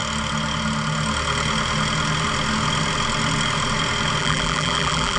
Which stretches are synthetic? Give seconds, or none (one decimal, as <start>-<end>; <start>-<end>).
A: 4.2-5.2